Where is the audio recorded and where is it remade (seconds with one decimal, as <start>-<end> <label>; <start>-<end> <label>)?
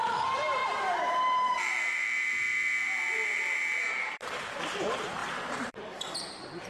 0.0-6.7 remade